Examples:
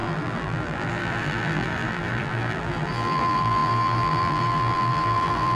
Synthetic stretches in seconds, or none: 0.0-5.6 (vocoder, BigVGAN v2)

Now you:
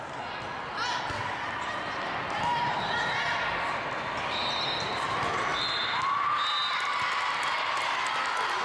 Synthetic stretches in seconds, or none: none

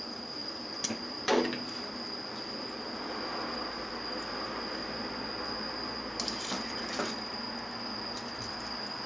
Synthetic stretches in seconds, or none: 0.4-1.4 (vocoder, BigVGAN v2)

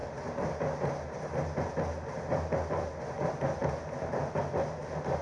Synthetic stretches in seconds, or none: 3.6-4.4 (vocoder, BigVGAN v2)

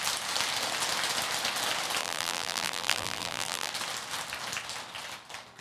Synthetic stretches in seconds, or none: 2.0-3.7 (vocoder, BigVGAN v2)

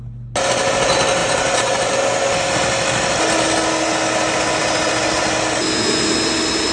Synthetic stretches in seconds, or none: 1.2-1.9 (vocoder, BigVGAN v2)

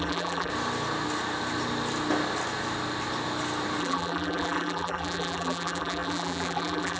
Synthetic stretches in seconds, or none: 0.0-0.5 (vocoder, BigVGAN v2); 3.8-7.0